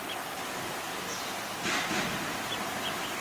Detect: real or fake real